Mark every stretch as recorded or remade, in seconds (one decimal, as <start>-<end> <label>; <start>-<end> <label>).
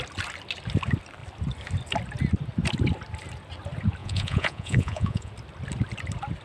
0.0-4.0 recorded; 4.0-5.3 remade; 5.3-6.4 recorded